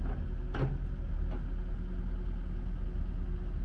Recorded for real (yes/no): yes